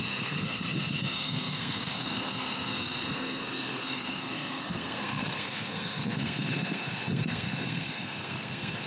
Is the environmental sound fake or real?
fake